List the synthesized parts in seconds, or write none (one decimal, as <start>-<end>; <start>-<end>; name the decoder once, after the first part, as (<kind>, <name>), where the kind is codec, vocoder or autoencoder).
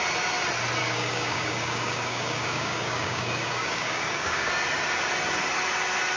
0.8-4.5 (codec, DAC)